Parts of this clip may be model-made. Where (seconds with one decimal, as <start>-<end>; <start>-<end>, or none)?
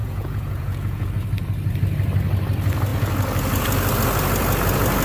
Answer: 0.0-1.1